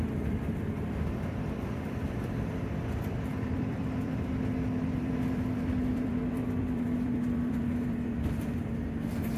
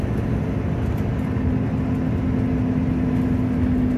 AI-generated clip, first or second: first